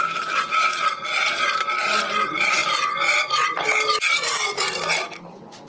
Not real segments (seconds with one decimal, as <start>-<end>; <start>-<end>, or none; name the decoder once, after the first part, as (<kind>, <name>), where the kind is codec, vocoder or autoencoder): none